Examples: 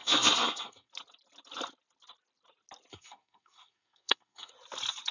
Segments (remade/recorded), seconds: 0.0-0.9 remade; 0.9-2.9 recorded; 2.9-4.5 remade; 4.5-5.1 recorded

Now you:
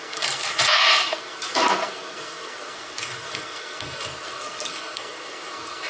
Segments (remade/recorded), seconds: 0.0-5.9 remade

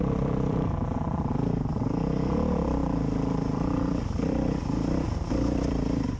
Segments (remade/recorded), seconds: 0.0-6.2 remade

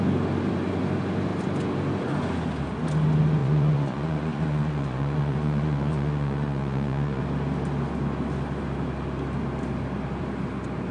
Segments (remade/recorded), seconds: 0.0-3.4 recorded; 3.4-7.2 remade; 7.2-10.9 recorded

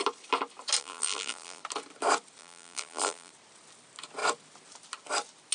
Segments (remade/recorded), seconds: 0.0-0.8 recorded; 0.8-1.6 remade; 1.6-2.4 recorded; 2.4-3.3 remade; 3.3-5.5 recorded

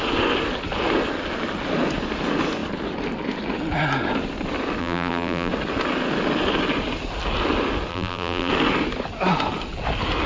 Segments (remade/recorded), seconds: 0.0-4.8 recorded; 4.8-5.5 remade; 5.5-7.9 recorded; 7.9-8.5 remade; 8.5-10.3 recorded

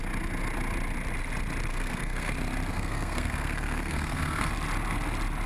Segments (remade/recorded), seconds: 0.0-1.7 recorded; 1.7-2.3 remade; 2.3-2.7 recorded; 2.7-4.5 remade; 4.5-5.5 recorded